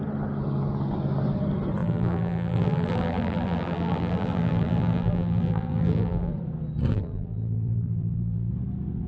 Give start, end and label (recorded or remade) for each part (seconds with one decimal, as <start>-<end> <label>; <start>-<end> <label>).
0.0-1.8 recorded; 1.8-6.3 remade; 6.3-6.9 recorded; 6.9-8.5 remade; 8.5-9.1 recorded